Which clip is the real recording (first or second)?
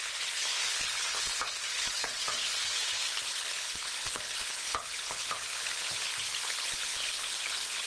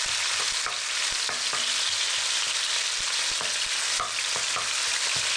second